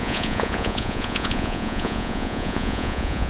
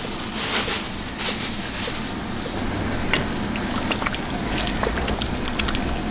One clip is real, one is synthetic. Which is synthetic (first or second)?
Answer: first